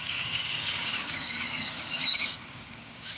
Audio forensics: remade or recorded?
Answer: remade